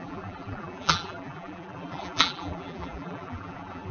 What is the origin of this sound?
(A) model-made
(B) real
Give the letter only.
A